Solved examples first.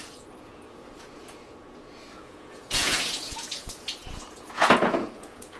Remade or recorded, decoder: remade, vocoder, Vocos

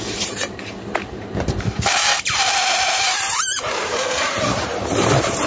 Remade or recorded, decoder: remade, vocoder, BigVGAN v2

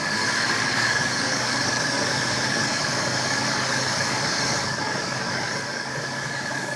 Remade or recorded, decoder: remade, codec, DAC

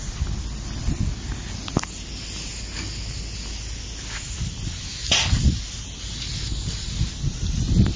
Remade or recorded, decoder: recorded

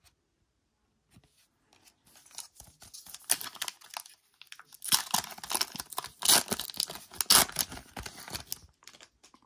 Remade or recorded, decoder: recorded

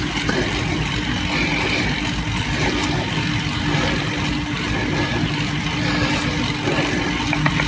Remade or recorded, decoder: recorded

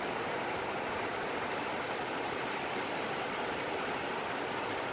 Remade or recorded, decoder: recorded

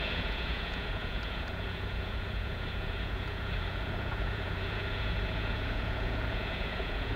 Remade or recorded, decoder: remade, vocoder, Vocos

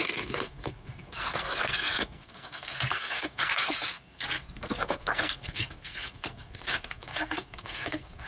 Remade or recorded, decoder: remade, codec, SNAC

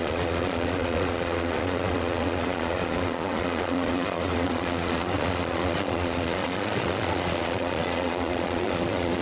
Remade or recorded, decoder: remade, vocoder, Vocos